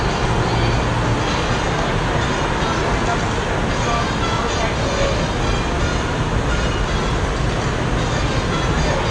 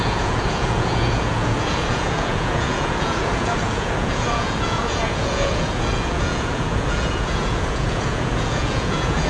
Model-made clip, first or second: second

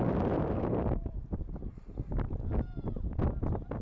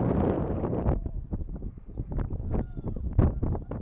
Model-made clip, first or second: second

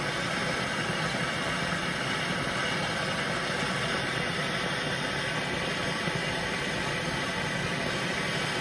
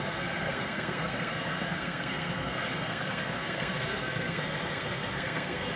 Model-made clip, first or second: second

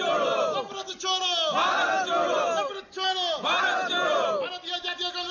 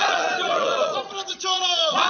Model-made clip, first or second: second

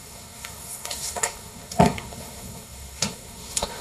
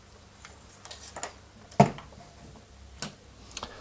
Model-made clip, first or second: first